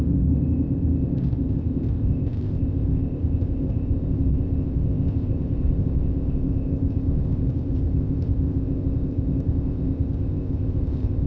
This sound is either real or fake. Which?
fake